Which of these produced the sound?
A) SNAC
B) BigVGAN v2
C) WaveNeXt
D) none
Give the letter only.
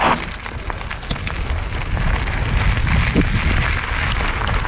D